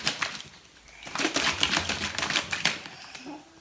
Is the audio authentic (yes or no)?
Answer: no